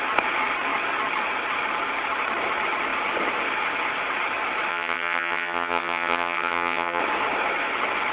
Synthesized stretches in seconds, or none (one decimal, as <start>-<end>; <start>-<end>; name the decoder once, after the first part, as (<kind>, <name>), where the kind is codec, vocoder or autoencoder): 4.7-7.0 (vocoder, HiFi-GAN)